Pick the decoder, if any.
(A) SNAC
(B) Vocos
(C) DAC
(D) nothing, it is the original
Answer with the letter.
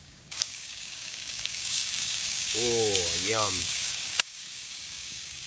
C